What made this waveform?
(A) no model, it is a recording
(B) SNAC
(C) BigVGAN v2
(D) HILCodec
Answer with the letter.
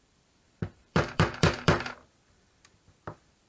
C